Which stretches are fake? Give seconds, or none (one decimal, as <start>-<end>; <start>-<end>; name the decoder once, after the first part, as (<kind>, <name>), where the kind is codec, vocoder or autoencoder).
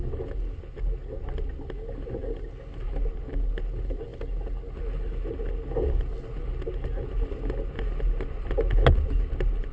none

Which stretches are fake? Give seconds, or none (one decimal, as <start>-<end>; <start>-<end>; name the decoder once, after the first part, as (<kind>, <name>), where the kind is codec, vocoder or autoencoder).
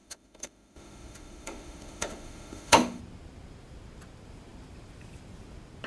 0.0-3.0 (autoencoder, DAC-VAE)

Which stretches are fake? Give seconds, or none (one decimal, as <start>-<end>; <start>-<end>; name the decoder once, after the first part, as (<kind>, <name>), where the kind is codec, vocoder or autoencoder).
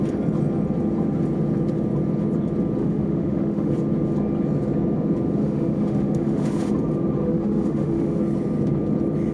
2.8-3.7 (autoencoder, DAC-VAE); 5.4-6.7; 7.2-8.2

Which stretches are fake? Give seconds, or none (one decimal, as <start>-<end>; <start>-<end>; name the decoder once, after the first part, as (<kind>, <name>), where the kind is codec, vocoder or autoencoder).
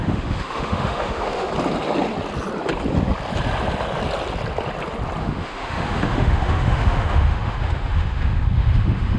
0.0-1.5 (autoencoder, DAC-VAE); 5.2-9.2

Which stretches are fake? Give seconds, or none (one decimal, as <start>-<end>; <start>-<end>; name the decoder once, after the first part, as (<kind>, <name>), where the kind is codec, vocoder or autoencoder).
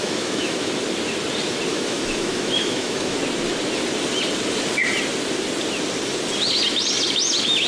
0.0-0.7 (autoencoder, DAC-VAE); 1.7-3.2